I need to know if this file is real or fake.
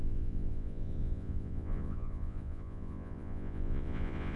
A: fake